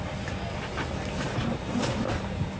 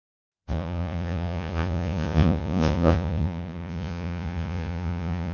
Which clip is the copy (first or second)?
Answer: second